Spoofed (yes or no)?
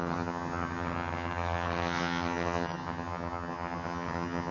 yes